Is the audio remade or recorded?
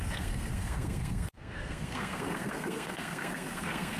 remade